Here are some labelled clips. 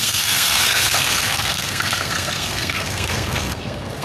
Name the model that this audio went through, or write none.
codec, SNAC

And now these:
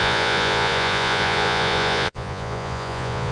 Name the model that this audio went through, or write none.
vocoder, Vocos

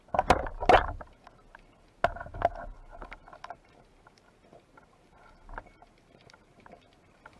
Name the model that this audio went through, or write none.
none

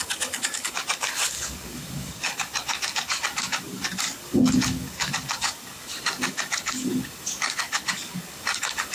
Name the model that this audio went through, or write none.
codec, DAC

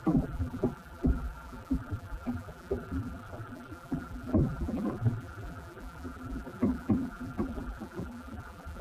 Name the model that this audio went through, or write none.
vocoder, BigVGAN v2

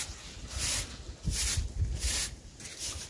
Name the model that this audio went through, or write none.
none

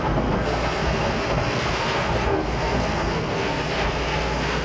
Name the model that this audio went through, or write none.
codec, SNAC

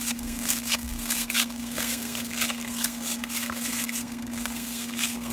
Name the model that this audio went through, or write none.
codec, SNAC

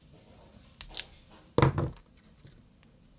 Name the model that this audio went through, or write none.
none